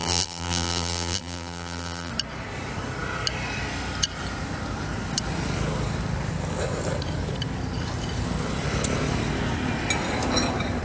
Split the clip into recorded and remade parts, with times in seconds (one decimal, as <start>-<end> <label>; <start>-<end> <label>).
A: 0.0-2.1 remade; 2.1-10.8 recorded